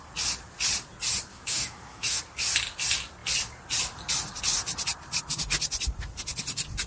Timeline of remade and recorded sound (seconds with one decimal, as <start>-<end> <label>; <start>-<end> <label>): 0.0-1.3 recorded; 1.3-2.2 remade; 2.2-6.9 recorded